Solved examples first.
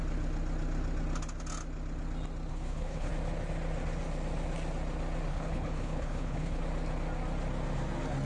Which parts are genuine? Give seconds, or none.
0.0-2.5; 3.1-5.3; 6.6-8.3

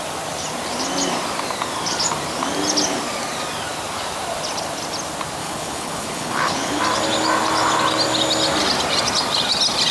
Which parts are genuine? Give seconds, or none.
0.0-5.4; 6.8-9.9

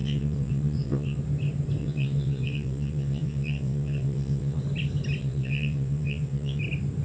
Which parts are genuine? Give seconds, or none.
1.2-1.8; 4.6-5.2; 6.6-7.0